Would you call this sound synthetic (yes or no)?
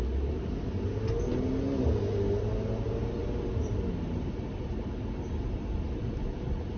no